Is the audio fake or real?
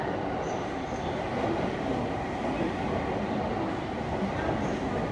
real